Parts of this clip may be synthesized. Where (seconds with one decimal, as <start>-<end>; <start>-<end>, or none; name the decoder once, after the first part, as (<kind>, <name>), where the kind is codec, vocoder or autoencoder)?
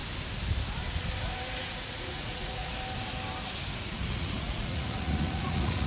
1.6-2.7 (vocoder, Vocos); 3.8-5.9